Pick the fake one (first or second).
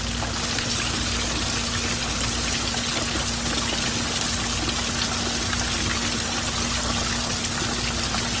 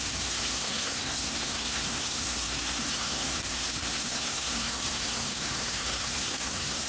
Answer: second